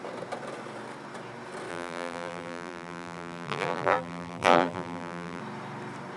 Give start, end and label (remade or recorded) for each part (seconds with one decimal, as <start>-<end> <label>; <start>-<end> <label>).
0.0-1.7 recorded; 1.7-5.4 remade; 5.4-6.2 recorded